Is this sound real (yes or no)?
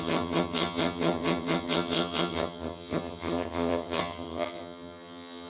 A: no